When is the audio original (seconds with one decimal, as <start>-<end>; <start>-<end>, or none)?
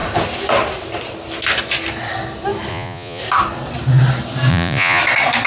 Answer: 0.0-2.7; 3.2-4.5; 5.0-5.5